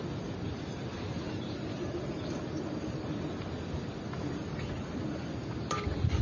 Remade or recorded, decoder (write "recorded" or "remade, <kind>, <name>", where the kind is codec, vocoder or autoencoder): recorded